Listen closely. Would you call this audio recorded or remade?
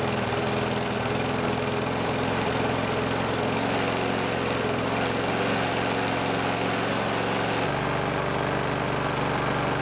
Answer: recorded